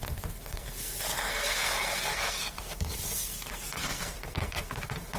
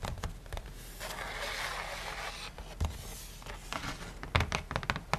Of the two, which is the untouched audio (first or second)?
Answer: second